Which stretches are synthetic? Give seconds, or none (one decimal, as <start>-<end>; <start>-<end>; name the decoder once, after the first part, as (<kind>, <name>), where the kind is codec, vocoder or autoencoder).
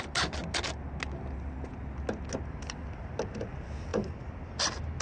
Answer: none